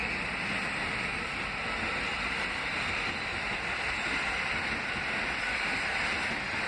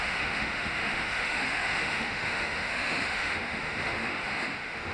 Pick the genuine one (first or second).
first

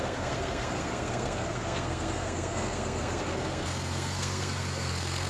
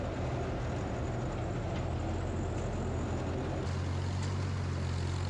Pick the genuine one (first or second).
second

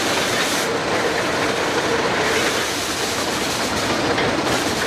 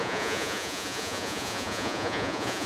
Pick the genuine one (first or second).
first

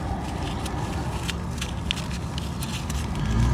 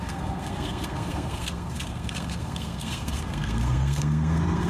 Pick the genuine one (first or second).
first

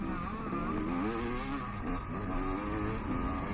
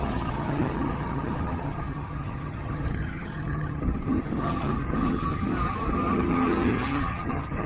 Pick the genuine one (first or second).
first